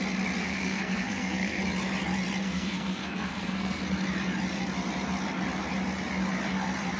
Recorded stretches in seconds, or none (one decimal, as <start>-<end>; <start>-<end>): 0.0-0.4; 1.6-2.4; 3.8-7.0